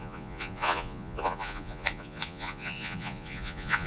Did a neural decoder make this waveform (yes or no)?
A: yes